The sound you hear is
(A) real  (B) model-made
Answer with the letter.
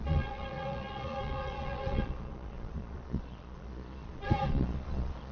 B